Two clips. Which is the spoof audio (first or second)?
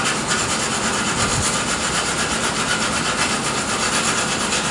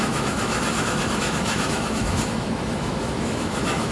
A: second